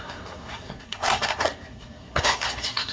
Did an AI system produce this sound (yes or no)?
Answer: yes